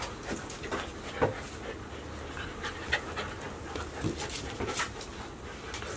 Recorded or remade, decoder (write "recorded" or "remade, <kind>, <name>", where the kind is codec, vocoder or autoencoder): recorded